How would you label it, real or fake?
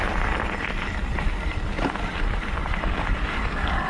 real